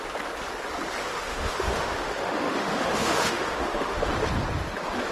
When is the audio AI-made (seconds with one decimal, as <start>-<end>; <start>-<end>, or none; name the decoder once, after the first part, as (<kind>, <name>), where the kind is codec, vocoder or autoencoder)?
1.0-4.1 (autoencoder, DAC-VAE)